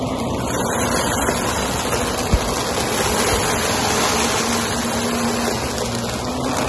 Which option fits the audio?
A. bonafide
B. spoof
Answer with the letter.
A